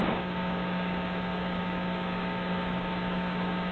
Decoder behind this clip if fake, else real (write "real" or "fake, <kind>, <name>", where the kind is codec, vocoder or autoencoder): fake, codec, DAC